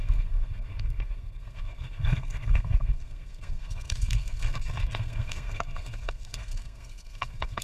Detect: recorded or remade remade